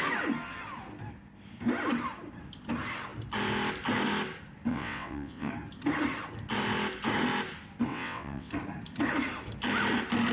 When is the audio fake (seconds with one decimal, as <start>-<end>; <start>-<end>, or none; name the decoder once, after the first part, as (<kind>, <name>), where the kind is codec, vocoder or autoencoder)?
4.7-5.5 (vocoder, WaveNeXt); 7.9-8.5